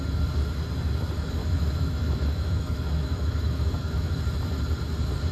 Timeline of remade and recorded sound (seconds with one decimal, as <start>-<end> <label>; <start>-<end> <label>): 0.0-1.4 recorded; 1.4-4.1 remade; 4.1-5.3 recorded